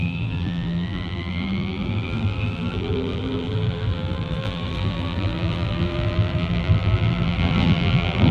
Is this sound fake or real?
fake